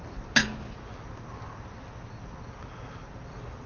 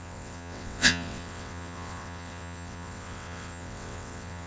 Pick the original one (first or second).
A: first